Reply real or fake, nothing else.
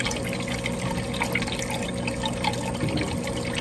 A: real